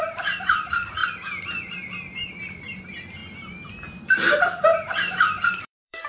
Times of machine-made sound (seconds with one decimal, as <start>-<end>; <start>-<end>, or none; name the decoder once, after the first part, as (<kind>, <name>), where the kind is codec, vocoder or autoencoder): 0.0-1.0 (vocoder, BigVGAN v2); 1.9-3.2; 4.4-6.1